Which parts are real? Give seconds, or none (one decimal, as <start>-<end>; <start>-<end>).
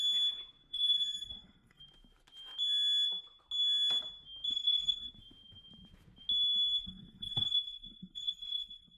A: 0.0-0.7; 1.8-4.5; 5.1-6.8